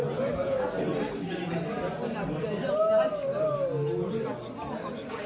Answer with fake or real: real